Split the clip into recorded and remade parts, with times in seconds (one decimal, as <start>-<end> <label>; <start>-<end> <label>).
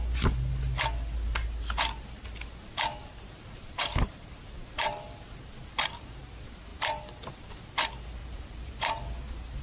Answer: 0.0-3.0 recorded; 3.0-6.2 remade; 6.2-8.2 recorded; 8.2-9.6 remade